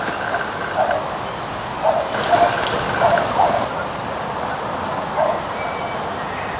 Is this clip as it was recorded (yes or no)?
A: yes